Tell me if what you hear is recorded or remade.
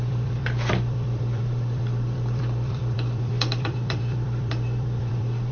remade